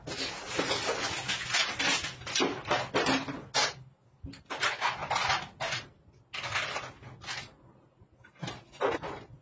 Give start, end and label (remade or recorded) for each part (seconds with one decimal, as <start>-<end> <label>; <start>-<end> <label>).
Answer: 0.0-9.4 recorded